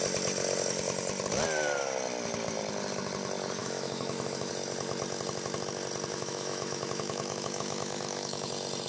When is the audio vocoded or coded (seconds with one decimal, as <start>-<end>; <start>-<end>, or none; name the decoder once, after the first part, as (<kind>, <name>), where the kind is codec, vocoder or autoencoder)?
3.6-4.5 (autoencoder, DAC-VAE); 6.1-8.5